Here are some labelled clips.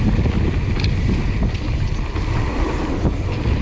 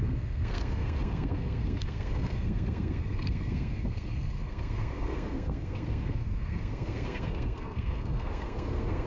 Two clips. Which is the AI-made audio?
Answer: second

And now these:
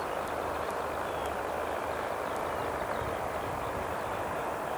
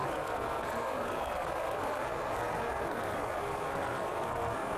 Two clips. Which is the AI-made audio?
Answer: second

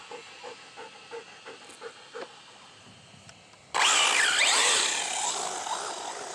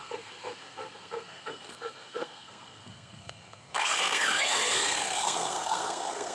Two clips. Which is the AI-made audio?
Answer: second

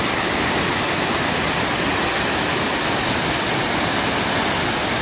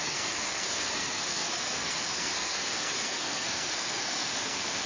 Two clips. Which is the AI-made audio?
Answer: second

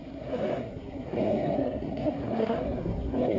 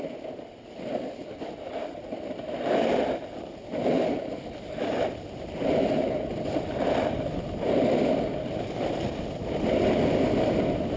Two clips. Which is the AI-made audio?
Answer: first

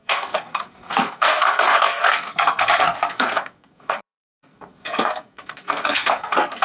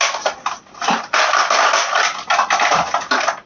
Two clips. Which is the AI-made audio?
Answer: first